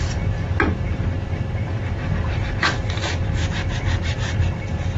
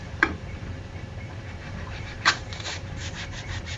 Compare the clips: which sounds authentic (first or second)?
first